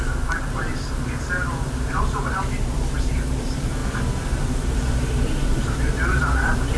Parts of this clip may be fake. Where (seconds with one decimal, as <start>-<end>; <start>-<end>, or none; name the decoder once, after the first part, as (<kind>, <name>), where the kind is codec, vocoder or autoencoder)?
0.0-3.8 (vocoder, BigVGAN v2); 4.4-6.8